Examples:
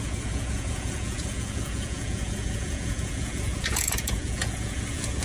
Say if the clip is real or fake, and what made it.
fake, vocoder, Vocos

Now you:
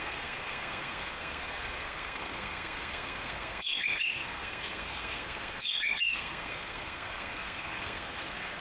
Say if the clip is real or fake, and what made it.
fake, codec, SNAC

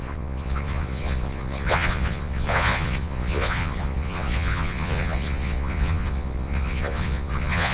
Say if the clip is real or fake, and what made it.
fake, vocoder, Vocos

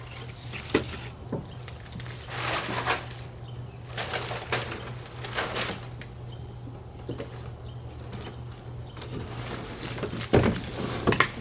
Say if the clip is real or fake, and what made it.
real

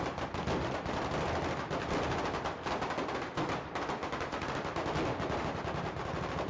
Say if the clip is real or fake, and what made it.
real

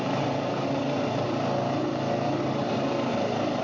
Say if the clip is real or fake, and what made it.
fake, vocoder, BigVGAN v2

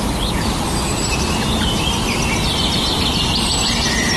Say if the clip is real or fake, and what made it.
real